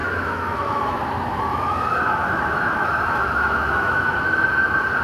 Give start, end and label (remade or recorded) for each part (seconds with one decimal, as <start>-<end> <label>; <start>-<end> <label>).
0.0-1.0 remade; 1.0-1.5 recorded; 1.5-4.5 remade; 4.5-5.0 recorded